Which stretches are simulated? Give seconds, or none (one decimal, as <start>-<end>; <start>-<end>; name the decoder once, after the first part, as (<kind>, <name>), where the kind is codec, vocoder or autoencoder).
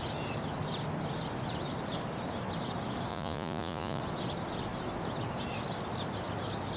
3.1-4.0 (vocoder, Vocos)